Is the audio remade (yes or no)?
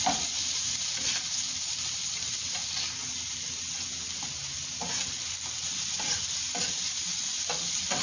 no